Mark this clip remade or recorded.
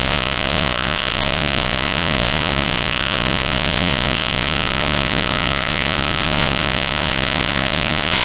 remade